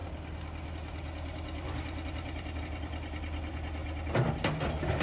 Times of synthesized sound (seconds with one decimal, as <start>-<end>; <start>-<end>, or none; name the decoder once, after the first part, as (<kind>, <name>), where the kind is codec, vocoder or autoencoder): none